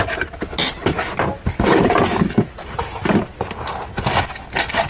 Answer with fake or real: real